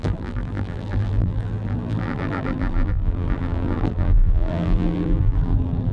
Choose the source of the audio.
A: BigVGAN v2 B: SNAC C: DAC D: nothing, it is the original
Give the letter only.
A